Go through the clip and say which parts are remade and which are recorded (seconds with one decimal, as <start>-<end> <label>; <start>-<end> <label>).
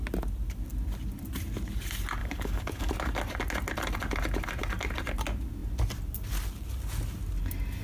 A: 0.0-2.2 recorded; 2.2-2.9 remade; 2.9-7.8 recorded